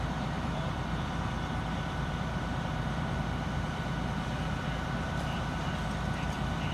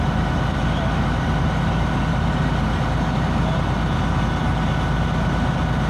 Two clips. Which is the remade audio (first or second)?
first